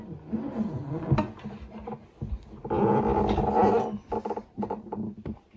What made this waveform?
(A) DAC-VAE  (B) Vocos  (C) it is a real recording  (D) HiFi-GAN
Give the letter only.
C